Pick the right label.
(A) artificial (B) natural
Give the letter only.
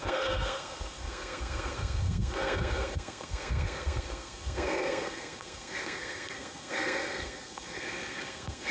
A